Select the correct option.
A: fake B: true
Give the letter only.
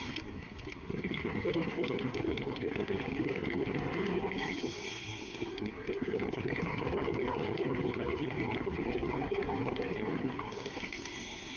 A